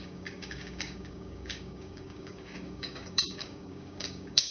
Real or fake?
fake